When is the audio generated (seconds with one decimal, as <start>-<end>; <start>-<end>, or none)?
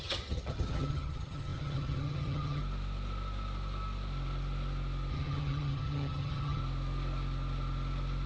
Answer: 0.0-2.6; 5.1-6.6